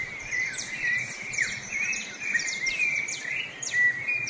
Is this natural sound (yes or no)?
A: no